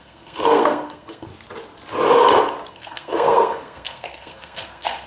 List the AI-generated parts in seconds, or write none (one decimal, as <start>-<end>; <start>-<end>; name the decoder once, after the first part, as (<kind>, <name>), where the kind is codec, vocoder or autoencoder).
0.0-1.3 (codec, SNAC); 2.7-5.1